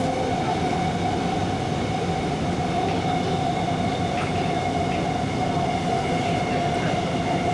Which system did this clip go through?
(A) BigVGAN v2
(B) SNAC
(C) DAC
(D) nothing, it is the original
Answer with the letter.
D